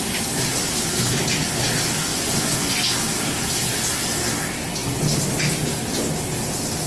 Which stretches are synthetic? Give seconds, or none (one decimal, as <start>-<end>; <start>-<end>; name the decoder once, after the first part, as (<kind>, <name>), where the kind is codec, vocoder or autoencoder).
2.1-2.7 (vocoder, Vocos)

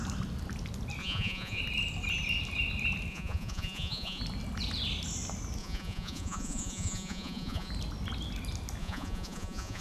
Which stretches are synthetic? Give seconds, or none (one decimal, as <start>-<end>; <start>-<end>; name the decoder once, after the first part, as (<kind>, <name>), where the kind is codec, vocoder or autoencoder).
1.0-1.6 (vocoder, Vocos); 3.1-4.2; 5.6-7.7; 8.8-9.8